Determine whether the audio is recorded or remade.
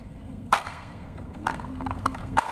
remade